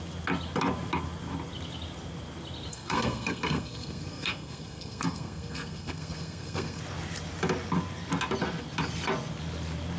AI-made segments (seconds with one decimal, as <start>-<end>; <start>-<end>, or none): 2.7-6.8